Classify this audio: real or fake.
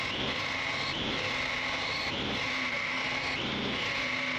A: real